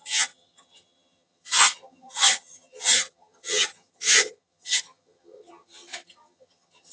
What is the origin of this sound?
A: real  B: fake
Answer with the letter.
B